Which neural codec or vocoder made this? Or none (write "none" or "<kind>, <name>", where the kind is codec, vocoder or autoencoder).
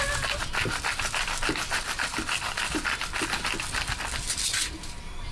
none